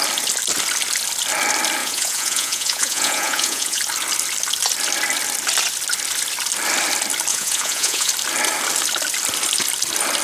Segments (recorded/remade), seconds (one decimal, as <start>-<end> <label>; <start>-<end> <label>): 0.0-1.8 recorded; 1.8-3.8 remade; 3.8-7.3 recorded; 7.3-8.1 remade; 8.1-10.2 recorded